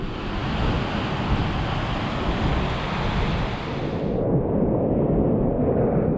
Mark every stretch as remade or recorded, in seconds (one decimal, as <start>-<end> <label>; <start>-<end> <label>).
0.0-6.2 recorded